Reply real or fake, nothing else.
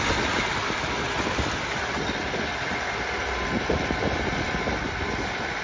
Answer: real